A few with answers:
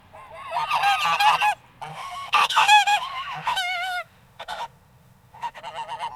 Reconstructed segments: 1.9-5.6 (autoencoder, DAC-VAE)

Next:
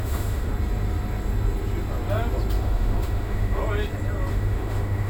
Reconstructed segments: 0.0-0.5 (autoencoder, DAC-VAE); 2.6-3.6; 4.3-5.1

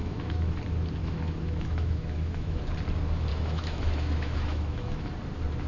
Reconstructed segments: 0.0-0.6 (autoencoder, DAC-VAE); 1.0-2.6; 3.3-5.1

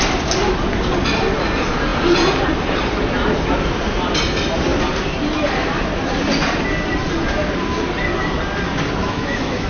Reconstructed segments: 9.0-9.7 (autoencoder, DAC-VAE)